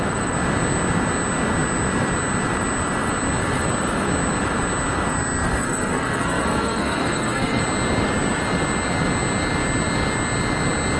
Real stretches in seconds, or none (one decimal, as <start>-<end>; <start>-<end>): 0.0-5.6; 7.6-11.0